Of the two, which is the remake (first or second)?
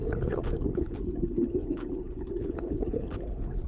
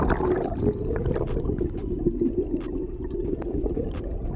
first